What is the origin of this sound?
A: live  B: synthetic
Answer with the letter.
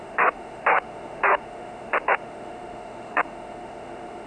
B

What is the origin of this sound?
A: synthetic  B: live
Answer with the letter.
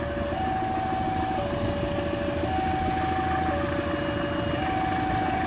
B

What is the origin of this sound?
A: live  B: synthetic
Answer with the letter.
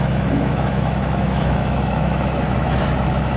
B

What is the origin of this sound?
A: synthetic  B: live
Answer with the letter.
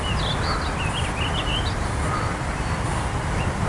B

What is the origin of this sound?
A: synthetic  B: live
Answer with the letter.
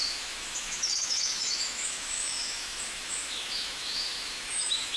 A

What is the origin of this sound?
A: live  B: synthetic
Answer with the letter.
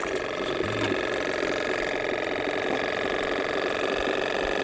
A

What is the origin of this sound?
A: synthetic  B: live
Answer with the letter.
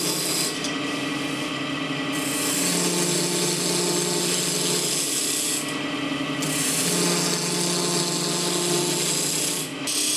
B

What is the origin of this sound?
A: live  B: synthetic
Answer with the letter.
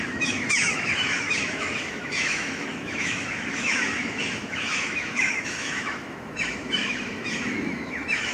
B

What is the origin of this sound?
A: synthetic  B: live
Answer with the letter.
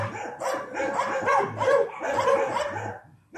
B